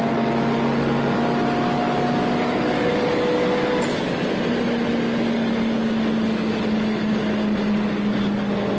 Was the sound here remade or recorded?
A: recorded